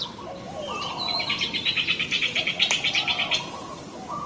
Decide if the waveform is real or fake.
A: real